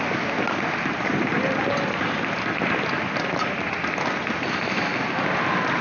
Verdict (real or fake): real